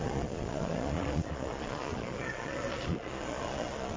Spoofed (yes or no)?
yes